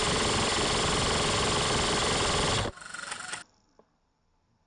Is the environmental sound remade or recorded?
recorded